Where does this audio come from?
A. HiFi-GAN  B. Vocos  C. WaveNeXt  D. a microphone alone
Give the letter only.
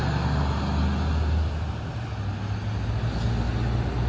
D